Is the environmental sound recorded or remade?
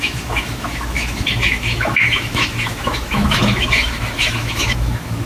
remade